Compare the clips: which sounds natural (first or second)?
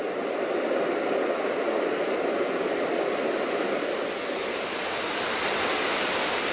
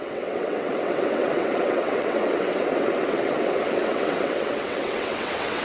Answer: first